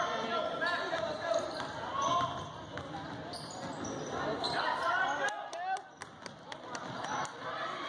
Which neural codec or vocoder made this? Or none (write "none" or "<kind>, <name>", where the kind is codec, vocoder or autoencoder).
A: none